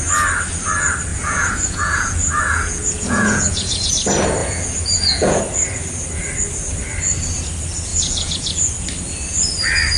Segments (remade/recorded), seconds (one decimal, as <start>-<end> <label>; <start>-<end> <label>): 0.0-1.1 recorded; 1.1-3.9 remade; 3.9-4.4 recorded; 4.4-5.4 remade; 5.4-7.9 recorded; 7.9-8.7 remade; 8.7-10.0 recorded